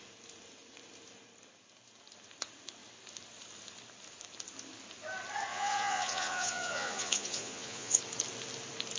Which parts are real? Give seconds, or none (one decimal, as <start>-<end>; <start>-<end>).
0.0-5.5; 8.0-9.0